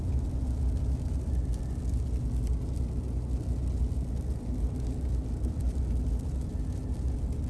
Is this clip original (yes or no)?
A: yes